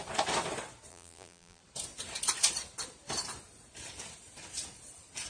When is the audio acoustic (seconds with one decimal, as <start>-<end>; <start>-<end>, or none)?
0.0-0.9; 1.6-5.3